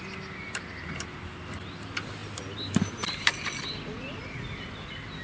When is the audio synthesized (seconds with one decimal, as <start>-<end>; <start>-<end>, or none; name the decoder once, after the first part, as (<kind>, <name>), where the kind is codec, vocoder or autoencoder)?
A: none